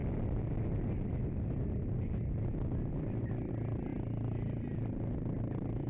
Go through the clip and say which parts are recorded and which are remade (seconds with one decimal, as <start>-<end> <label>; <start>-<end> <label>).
0.0-3.5 remade; 3.5-5.9 recorded